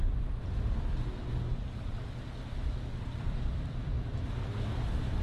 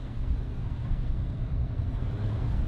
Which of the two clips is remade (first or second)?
second